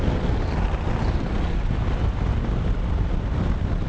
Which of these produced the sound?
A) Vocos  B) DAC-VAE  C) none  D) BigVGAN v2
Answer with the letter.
C